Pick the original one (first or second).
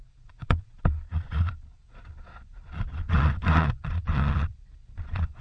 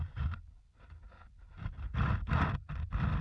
second